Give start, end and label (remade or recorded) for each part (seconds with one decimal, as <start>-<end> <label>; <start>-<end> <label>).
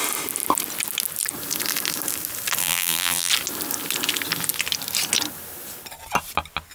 0.0-2.6 recorded; 2.6-3.3 remade; 3.3-6.7 recorded